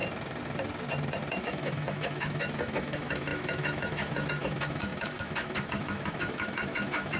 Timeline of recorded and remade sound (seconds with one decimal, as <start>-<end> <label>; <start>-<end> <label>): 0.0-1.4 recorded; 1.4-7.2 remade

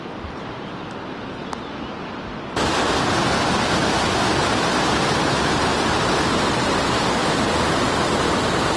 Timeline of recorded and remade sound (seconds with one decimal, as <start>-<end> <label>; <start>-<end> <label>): 0.0-8.8 recorded

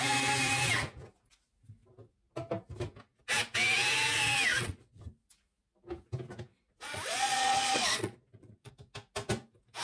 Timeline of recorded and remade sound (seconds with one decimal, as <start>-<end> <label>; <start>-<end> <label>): 0.0-4.5 recorded; 4.5-5.0 remade; 5.0-6.5 recorded; 6.5-8.7 remade; 8.7-9.8 recorded